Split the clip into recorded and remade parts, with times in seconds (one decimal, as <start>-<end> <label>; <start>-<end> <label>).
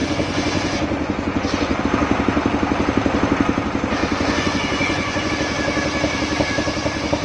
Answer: 0.0-1.8 remade; 1.8-4.0 recorded; 4.0-5.3 remade; 5.3-7.2 recorded